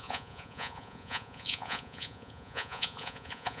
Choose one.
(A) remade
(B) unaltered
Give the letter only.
A